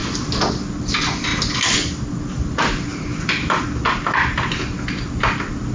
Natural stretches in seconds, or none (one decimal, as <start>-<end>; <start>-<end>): 0.0-5.7